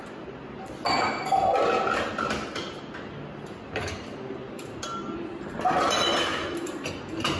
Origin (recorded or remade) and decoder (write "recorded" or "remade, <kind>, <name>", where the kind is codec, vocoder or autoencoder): recorded